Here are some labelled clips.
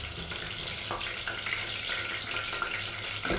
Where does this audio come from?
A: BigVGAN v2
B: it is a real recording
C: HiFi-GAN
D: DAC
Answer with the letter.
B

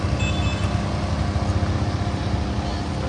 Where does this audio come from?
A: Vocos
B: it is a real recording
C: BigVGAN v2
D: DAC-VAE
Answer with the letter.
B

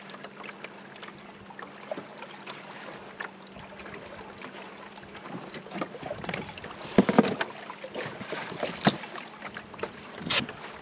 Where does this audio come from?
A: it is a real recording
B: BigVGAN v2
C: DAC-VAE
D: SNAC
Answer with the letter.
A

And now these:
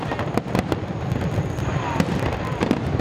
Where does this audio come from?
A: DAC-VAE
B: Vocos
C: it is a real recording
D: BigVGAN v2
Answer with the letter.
C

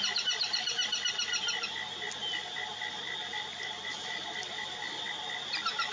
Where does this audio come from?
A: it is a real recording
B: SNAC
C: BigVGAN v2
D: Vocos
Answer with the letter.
A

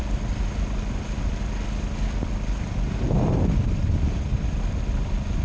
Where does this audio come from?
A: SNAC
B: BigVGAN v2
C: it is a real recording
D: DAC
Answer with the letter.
C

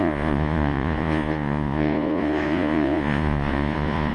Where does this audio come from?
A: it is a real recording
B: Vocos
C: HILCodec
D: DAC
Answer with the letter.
B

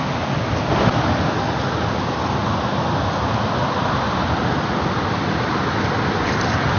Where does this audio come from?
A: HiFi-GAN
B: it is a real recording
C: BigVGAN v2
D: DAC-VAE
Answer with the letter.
B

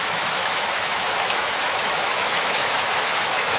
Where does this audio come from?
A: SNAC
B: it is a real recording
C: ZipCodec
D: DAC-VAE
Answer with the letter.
D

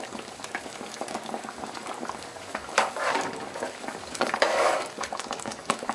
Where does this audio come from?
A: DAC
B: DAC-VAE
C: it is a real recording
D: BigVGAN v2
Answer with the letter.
A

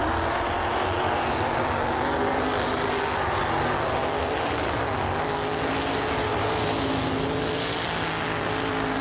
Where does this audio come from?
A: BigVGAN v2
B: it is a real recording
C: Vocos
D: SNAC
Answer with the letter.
B